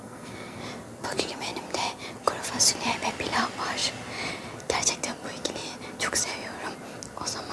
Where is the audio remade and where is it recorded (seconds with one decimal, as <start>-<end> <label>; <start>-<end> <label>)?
0.0-0.6 remade; 0.6-7.5 recorded